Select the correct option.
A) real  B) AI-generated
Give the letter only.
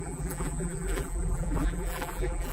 B